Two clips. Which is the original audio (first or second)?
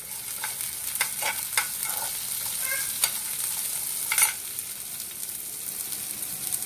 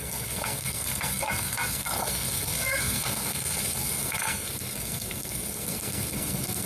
first